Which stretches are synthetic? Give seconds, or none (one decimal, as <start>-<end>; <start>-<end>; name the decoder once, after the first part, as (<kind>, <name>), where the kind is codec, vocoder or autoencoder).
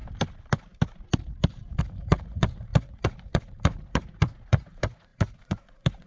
1.8-6.1 (vocoder, Vocos)